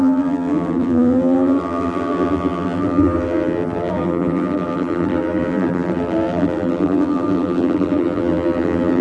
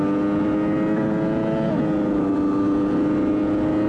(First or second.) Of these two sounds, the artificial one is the first